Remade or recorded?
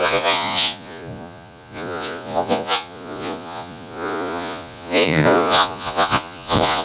remade